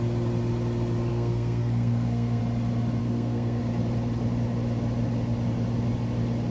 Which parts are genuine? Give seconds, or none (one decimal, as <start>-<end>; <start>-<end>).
0.0-1.1; 2.4-3.0; 3.6-6.5